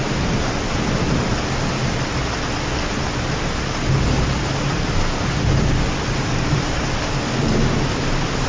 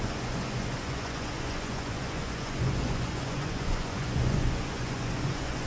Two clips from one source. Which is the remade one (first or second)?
second